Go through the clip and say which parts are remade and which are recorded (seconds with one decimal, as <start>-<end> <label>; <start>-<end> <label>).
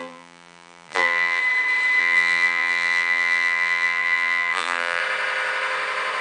0.0-1.4 remade; 1.4-2.0 recorded; 2.0-5.0 remade; 5.0-6.2 recorded